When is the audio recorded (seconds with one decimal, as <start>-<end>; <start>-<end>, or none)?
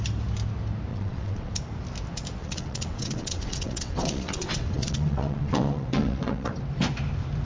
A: 0.0-0.9; 1.5-2.4; 6.5-7.4